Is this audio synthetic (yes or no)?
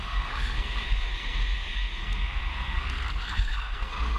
yes